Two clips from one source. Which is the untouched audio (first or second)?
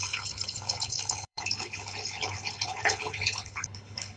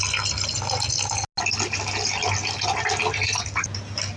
second